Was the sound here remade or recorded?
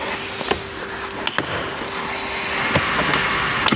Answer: recorded